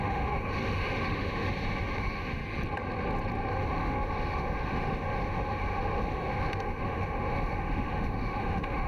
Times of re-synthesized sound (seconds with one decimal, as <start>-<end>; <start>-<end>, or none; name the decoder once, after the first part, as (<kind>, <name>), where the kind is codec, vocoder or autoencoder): 0.0-2.4 (autoencoder, DAC-VAE); 3.5-8.9